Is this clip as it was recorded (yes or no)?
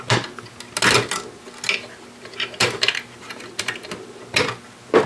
yes